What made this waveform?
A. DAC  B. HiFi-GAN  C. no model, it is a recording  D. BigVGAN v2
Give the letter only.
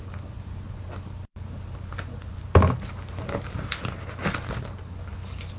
C